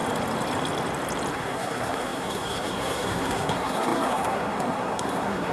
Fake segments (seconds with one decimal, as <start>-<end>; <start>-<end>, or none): 1.3-5.5